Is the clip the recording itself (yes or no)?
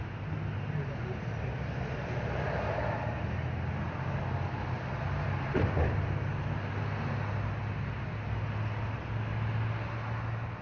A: yes